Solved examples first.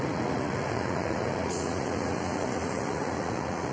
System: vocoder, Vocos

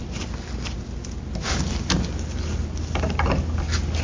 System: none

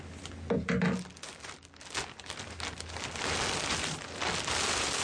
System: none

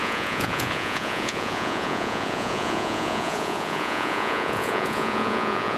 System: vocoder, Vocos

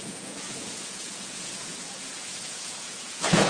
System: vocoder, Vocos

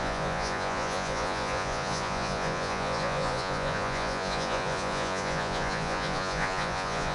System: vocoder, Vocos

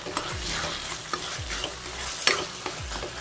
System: none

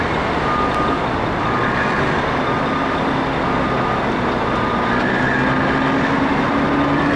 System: none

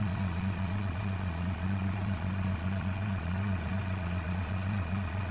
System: vocoder, Vocos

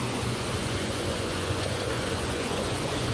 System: vocoder, Vocos